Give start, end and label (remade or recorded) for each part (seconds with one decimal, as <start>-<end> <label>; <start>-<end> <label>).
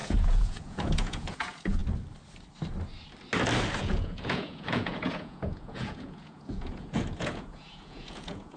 0.0-1.8 remade; 1.8-3.8 recorded; 3.8-8.6 remade